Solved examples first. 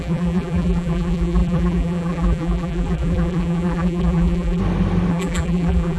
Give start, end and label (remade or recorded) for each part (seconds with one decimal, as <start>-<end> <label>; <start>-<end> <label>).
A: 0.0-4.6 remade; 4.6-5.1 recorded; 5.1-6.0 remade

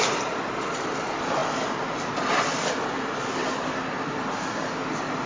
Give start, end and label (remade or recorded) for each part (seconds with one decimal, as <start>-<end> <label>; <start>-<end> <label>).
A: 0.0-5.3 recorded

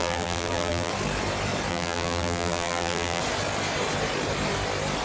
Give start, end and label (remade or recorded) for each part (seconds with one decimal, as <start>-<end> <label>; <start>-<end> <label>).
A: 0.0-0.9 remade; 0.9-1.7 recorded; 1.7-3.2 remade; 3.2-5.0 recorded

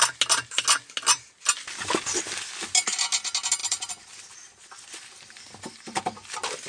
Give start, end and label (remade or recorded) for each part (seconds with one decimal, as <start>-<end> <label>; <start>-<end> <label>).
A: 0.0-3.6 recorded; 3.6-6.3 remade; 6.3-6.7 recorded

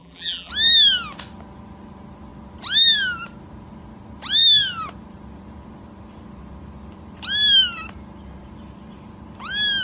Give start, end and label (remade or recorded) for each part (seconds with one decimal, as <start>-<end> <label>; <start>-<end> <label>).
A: 0.0-0.5 remade; 0.5-9.8 recorded